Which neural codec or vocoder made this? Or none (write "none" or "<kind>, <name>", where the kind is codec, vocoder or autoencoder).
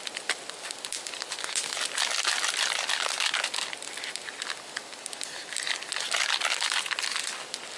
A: none